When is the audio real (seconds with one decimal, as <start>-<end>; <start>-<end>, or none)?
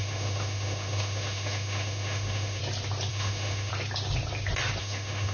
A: 2.6-3.1; 3.7-4.8